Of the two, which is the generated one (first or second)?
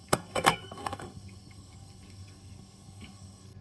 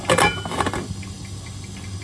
first